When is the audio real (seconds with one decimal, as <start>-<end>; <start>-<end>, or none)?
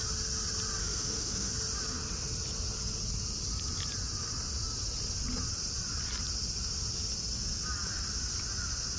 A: 0.0-0.8; 1.5-9.0